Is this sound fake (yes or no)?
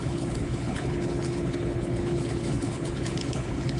yes